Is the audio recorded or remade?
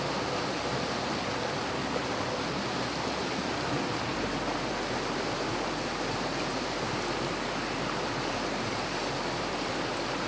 recorded